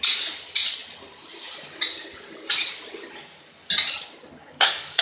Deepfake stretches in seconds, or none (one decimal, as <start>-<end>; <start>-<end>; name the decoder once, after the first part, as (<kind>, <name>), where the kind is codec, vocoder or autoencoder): 4.4-5.0 (codec, DAC)